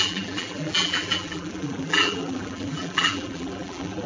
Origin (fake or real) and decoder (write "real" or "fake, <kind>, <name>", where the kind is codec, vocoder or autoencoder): fake, vocoder, BigVGAN v2